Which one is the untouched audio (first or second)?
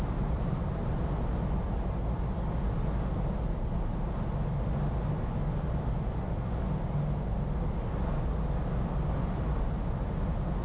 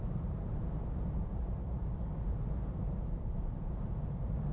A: first